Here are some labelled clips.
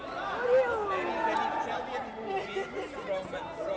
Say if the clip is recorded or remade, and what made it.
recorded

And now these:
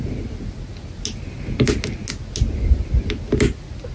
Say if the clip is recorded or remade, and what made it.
recorded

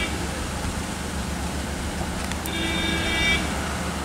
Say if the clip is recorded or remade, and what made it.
recorded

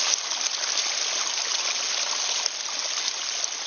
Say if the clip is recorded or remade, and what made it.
recorded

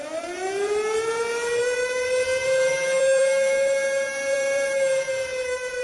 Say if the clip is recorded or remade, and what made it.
remade, vocoder, BigVGAN v2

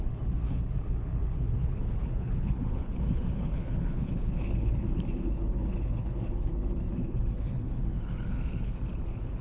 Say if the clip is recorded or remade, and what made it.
remade, codec, HILCodec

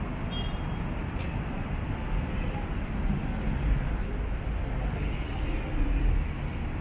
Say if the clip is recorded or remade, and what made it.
recorded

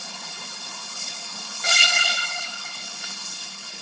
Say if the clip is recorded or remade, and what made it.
remade, codec, HILCodec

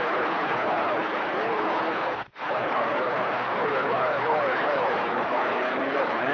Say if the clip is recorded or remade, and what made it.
remade, codec, HILCodec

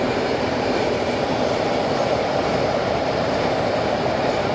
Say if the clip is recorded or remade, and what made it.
remade, vocoder, BigVGAN v2